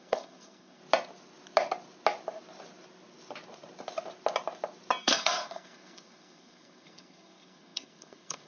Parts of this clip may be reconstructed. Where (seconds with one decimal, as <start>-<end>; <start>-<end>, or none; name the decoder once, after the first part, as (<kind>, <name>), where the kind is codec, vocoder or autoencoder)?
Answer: 0.0-0.8 (codec, SNAC); 5.0-8.5